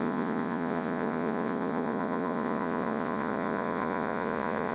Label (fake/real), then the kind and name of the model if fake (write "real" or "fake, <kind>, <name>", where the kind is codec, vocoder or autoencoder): fake, vocoder, Vocos